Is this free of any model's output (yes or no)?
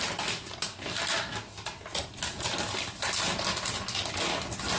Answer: yes